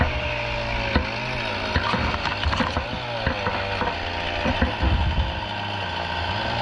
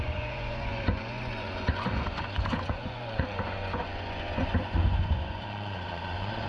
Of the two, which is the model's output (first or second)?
second